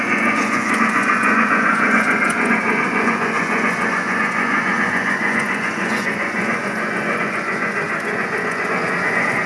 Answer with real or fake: fake